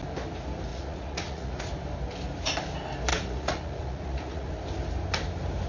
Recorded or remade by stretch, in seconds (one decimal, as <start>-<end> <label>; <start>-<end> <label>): 0.0-0.7 recorded; 0.7-1.6 remade; 1.6-3.1 recorded; 3.1-4.5 remade; 4.5-5.7 recorded